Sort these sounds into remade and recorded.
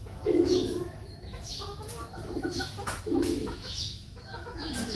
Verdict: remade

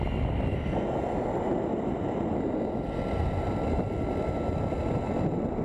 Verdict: recorded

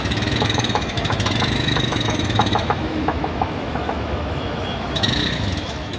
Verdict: remade